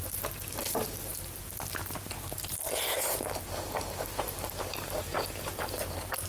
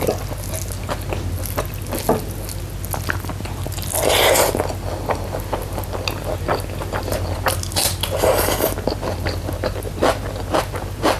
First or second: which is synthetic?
first